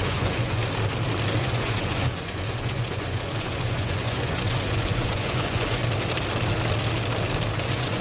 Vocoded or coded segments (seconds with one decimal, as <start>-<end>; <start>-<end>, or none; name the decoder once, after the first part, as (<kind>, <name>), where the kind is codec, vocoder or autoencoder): 0.0-0.6 (vocoder, Vocos); 1.4-5.8; 7.6-8.0